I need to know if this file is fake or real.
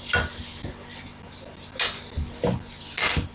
real